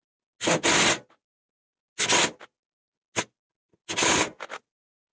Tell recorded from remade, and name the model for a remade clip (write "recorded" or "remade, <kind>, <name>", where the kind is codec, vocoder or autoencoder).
recorded